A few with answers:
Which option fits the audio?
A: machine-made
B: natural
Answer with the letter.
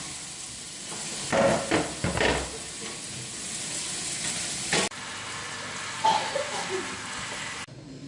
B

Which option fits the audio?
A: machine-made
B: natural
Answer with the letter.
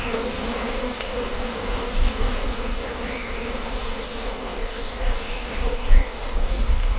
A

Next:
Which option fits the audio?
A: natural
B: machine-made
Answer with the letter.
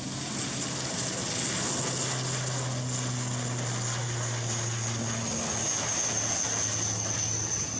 A